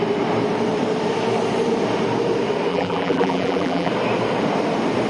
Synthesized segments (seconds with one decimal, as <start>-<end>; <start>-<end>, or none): 2.7-3.9